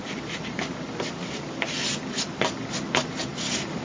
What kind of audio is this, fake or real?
real